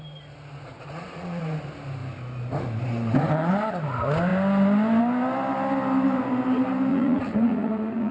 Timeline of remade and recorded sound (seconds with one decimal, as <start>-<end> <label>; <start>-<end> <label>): 0.0-0.7 recorded; 0.7-1.4 remade; 1.4-6.9 recorded; 6.9-8.1 remade